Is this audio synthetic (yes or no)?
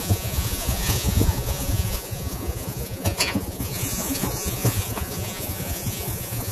yes